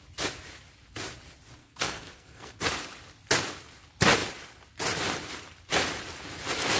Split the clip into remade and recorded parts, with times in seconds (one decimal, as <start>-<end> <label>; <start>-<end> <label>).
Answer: 0.0-1.6 recorded; 1.6-2.6 remade; 2.6-6.8 recorded